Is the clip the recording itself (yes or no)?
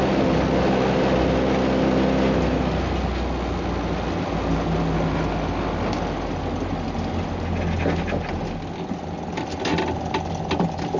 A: yes